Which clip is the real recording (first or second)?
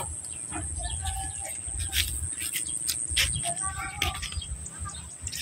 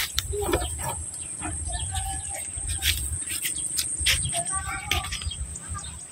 first